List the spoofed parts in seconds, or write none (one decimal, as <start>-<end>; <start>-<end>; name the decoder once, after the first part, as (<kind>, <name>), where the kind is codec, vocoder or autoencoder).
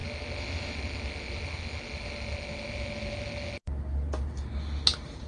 none